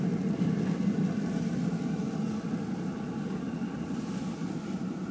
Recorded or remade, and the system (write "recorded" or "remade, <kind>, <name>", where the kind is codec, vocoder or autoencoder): recorded